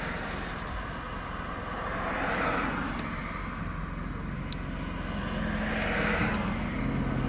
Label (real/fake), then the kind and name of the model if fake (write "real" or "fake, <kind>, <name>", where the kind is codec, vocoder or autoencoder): real